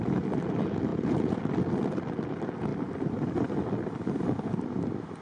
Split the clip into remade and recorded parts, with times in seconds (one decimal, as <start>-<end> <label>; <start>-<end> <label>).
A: 0.0-0.9 recorded; 0.9-1.4 remade; 1.4-5.2 recorded